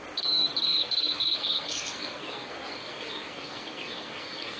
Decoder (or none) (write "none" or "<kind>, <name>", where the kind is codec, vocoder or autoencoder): codec, SNAC